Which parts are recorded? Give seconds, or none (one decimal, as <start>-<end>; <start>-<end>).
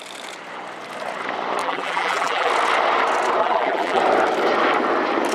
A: 0.0-1.6; 2.5-3.4; 4.0-5.3